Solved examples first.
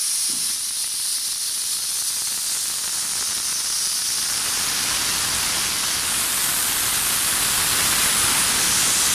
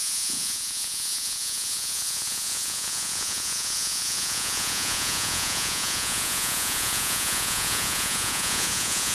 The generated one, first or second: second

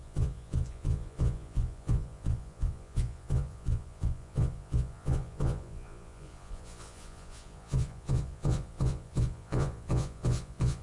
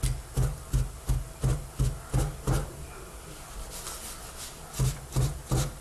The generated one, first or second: first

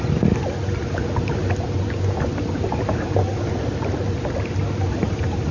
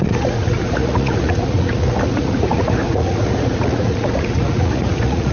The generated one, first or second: second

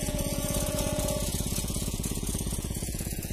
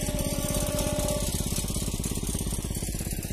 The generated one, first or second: first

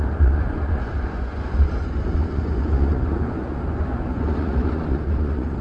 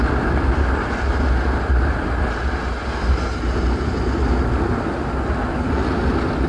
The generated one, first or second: first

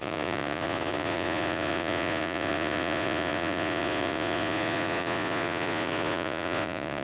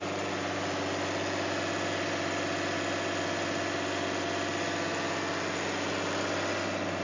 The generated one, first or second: first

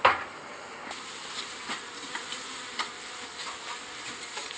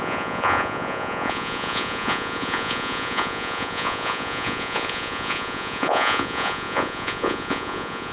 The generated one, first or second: second